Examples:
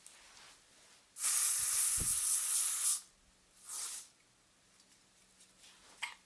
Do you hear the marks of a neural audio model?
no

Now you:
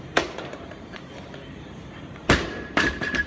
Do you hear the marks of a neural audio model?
yes